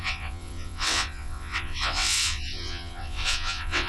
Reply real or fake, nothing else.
fake